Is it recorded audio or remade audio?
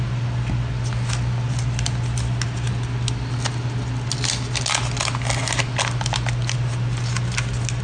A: recorded